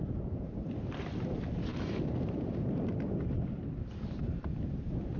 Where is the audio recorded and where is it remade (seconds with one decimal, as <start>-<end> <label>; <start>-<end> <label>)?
0.0-1.7 recorded; 1.7-4.8 remade; 4.8-5.2 recorded